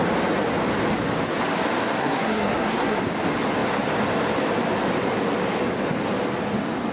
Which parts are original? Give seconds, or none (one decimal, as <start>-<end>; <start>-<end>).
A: 0.0-2.0; 3.0-6.9